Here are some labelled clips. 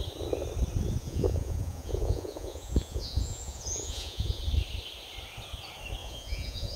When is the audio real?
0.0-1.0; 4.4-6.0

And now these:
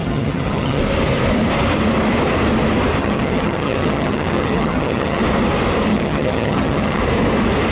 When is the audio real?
0.8-3.0; 5.2-5.9; 7.0-7.7

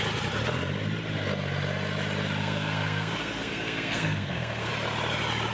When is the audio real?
0.0-2.4; 4.7-5.5

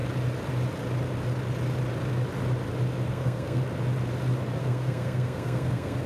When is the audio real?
0.0-3.1; 3.6-4.6

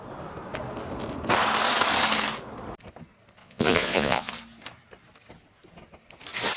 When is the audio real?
0.0-3.4; 4.3-6.6

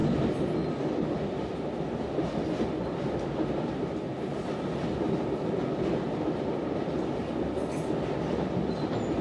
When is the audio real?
0.0-9.2